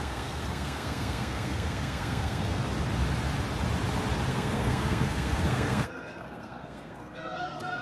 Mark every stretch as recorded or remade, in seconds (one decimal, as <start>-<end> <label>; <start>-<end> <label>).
0.0-2.6 remade; 2.6-4.3 recorded; 4.3-7.8 remade